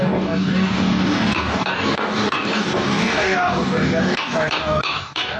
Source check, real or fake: fake